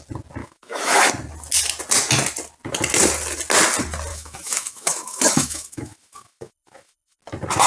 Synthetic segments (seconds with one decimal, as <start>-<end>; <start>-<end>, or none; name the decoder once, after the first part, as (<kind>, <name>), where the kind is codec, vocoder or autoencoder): 0.4-1.1 (autoencoder, DAC-VAE); 4.1-7.2